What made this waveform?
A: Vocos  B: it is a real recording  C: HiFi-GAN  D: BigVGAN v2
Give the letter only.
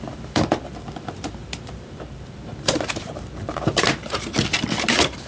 D